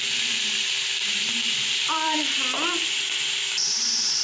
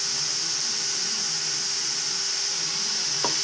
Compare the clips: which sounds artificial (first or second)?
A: first